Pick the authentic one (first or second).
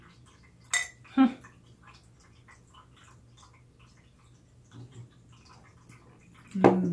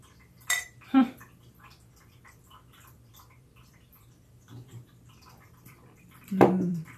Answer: first